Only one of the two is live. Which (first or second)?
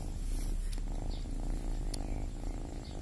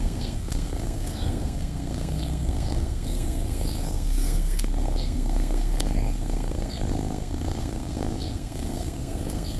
first